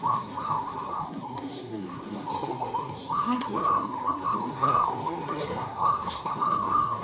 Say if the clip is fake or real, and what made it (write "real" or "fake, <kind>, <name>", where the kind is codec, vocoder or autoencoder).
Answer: fake, codec, SNAC